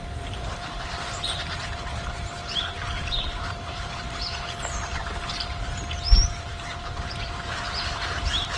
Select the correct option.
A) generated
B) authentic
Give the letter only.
A